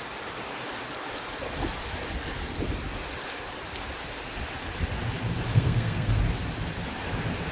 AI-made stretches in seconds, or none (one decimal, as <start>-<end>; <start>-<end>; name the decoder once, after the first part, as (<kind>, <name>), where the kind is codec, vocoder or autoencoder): 5.5-6.2 (codec, SNAC)

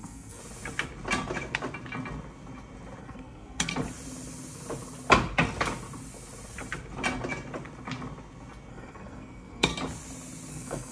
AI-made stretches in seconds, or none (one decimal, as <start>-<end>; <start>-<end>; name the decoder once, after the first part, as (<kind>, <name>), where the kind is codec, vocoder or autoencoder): 0.0-0.4 (codec, SNAC); 3.0-3.7; 8.7-9.7; 10.5-10.9

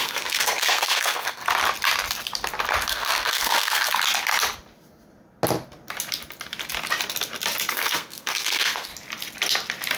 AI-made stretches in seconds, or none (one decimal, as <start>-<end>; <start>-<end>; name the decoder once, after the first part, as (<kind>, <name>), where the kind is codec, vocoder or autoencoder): 0.0-1.4 (codec, SNAC); 2.9-3.9; 7.7-8.9

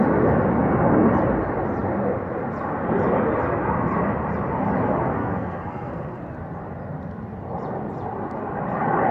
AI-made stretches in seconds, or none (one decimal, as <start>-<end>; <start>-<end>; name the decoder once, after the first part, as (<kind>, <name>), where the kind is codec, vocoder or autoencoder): 5.2-6.2 (codec, SNAC)

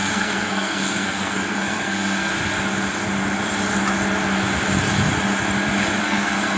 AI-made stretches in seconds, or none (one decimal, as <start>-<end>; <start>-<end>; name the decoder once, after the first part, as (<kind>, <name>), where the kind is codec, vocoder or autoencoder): 0.0-2.3 (codec, SNAC); 6.0-6.6

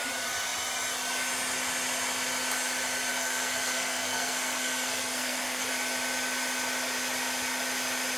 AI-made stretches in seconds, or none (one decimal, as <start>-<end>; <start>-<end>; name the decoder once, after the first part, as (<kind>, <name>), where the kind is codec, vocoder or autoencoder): 3.1-5.7 (codec, SNAC)

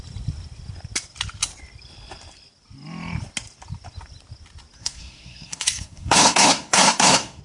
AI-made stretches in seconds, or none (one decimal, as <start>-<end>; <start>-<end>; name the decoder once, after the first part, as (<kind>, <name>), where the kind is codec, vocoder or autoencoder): 4.8-7.4 (codec, SNAC)